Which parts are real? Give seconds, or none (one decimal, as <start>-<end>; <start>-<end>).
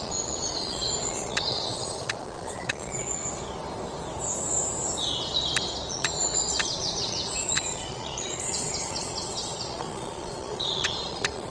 3.2-5.9